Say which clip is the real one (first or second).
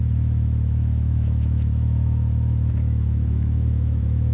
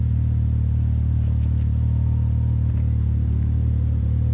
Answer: second